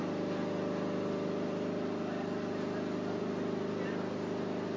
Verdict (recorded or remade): recorded